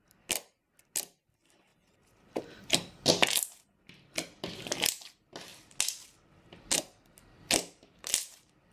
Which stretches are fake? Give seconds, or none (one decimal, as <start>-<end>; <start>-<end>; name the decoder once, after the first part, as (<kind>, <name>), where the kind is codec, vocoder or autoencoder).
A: none